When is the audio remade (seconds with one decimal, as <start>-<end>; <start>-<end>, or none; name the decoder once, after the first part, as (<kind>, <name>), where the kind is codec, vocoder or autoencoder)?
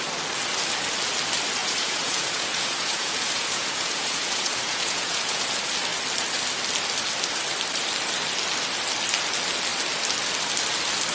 1.6-5.5 (vocoder, Vocos)